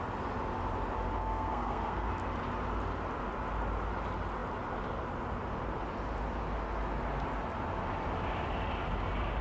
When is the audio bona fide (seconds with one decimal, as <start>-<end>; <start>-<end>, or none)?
0.0-1.2; 2.1-9.4